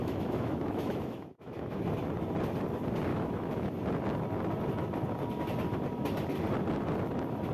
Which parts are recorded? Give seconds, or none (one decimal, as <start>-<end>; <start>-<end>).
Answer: 1.8-3.1; 3.7-7.5